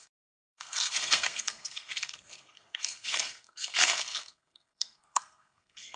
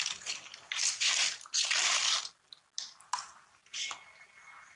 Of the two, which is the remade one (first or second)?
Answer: first